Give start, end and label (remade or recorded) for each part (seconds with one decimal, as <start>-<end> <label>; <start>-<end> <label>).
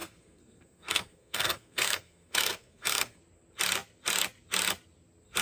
0.0-3.2 remade; 3.2-5.4 recorded